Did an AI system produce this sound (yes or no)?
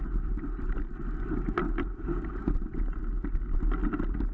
no